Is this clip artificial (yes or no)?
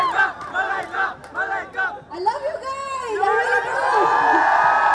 no